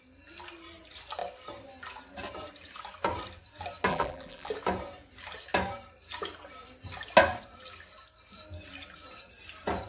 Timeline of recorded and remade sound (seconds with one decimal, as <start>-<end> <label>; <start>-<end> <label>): 0.0-3.9 recorded; 3.9-4.5 remade; 4.5-9.9 recorded